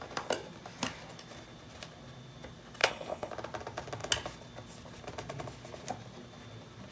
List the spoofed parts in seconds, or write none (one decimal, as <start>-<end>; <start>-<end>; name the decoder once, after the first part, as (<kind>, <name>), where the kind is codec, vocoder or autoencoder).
2.8-3.3 (codec, HILCodec)